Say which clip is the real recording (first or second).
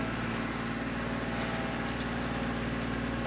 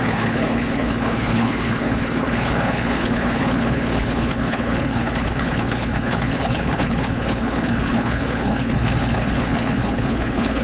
first